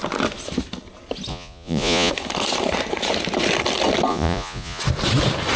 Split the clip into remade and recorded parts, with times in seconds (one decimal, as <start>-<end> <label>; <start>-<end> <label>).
0.0-1.3 recorded; 1.3-2.1 remade; 2.1-4.1 recorded; 4.1-4.8 remade; 4.8-5.6 recorded